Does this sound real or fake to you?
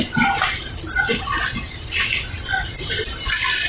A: real